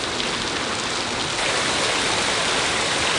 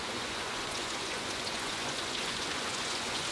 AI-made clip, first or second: second